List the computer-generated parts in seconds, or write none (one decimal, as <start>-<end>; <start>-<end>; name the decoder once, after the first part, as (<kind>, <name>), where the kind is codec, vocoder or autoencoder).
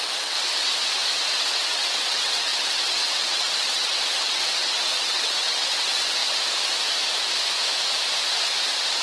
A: 0.0-0.7 (vocoder, WaveNeXt); 1.3-6.2